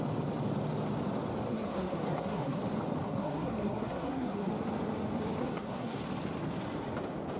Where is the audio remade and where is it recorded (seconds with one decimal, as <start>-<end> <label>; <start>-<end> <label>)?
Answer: 0.0-1.5 recorded; 1.5-2.6 remade; 2.6-3.0 recorded; 3.0-4.5 remade; 4.5-5.4 recorded; 5.4-6.0 remade; 6.0-7.4 recorded